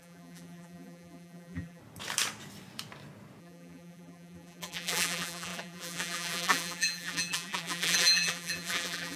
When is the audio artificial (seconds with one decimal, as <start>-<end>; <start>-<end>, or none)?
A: 0.0-1.8; 3.4-9.2